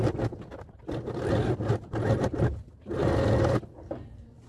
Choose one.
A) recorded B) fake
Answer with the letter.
A